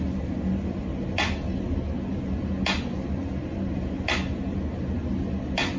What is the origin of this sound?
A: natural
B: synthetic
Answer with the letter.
A